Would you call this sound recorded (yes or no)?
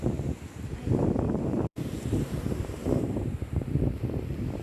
no